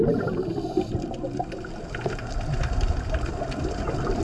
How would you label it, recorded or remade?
recorded